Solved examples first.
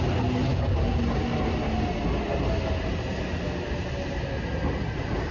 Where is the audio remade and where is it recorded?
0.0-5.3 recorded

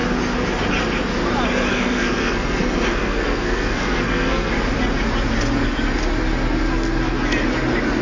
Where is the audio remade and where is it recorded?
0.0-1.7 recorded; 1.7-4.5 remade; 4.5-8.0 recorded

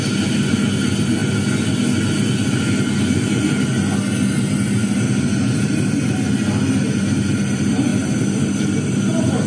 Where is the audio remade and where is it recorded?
0.0-9.5 recorded